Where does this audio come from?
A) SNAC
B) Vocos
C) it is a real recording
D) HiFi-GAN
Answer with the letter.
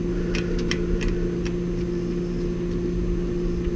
C